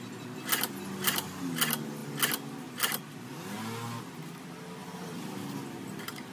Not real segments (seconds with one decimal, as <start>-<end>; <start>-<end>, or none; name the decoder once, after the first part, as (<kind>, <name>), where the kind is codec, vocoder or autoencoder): 4.8-5.6 (vocoder, BigVGAN v2)